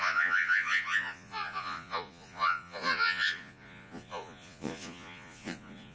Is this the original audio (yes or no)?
no